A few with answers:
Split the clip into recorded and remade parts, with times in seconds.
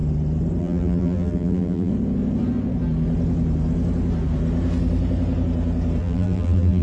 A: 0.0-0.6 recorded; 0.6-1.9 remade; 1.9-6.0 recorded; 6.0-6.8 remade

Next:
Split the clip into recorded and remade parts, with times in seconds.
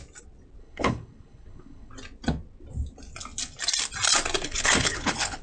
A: 0.0-0.6 recorded; 0.6-1.9 remade; 1.9-4.4 recorded; 4.4-5.4 remade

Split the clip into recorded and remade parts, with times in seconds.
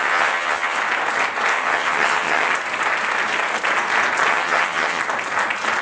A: 0.0-0.8 remade; 0.8-1.5 recorded; 1.5-2.5 remade; 2.5-4.3 recorded; 4.3-5.0 remade; 5.0-5.8 recorded